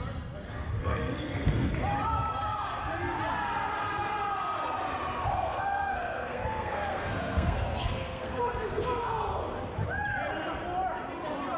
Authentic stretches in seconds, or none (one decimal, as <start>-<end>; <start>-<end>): 0.0-0.8; 1.7-5.3; 9.4-11.6